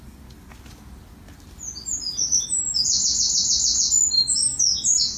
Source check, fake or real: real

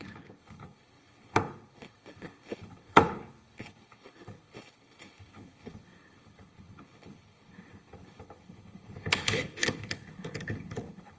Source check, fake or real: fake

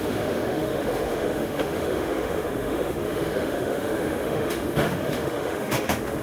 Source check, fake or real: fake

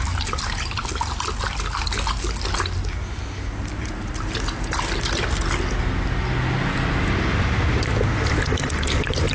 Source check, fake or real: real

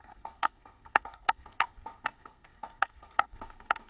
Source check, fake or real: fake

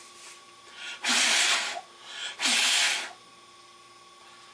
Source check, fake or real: real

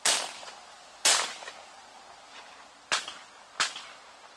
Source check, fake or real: real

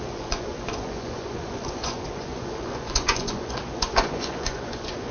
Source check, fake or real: fake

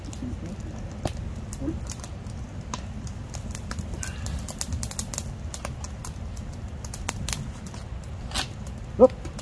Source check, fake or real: real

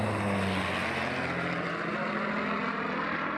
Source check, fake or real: real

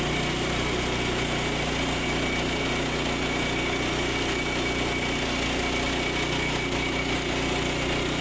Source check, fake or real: real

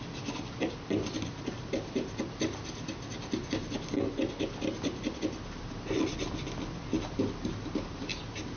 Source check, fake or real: real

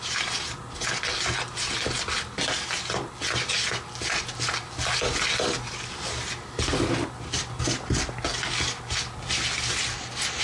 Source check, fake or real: real